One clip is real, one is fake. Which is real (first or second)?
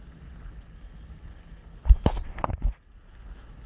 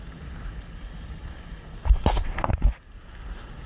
first